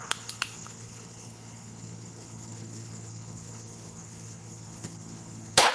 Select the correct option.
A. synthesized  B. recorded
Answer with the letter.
A